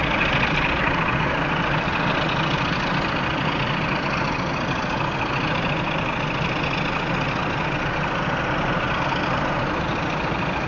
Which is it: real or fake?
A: real